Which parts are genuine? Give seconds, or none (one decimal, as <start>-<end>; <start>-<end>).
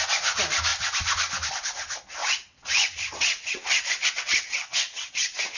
0.0-2.2